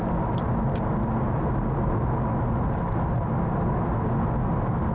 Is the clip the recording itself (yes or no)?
yes